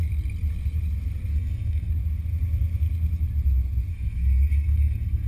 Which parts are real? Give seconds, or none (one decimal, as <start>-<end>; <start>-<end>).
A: 0.0-1.3; 1.9-3.9